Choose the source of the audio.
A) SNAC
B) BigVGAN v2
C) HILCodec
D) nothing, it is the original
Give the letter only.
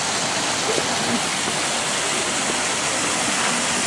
D